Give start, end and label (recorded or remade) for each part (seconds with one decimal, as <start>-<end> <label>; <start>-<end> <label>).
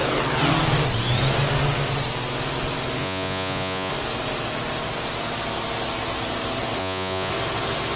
0.0-3.0 recorded; 3.0-3.9 remade; 3.9-6.8 recorded; 6.8-7.3 remade; 7.3-8.0 recorded